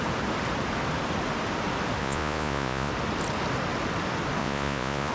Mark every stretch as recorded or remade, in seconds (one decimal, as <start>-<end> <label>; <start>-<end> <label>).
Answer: 0.0-2.0 recorded; 2.0-2.9 remade; 2.9-4.4 recorded; 4.4-5.1 remade